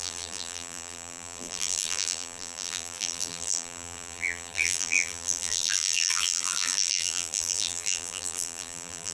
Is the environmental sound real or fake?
fake